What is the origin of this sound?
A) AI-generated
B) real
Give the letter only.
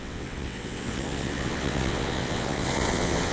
A